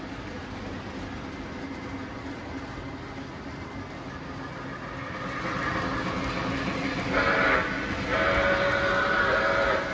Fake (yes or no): no